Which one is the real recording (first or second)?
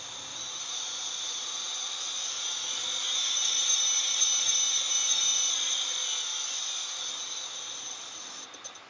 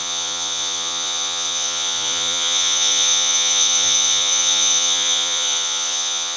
first